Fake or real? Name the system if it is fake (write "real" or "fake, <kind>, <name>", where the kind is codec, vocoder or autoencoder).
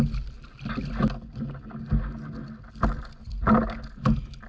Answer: real